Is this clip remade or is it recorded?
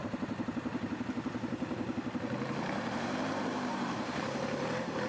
remade